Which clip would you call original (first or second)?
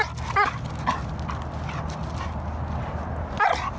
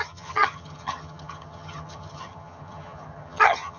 first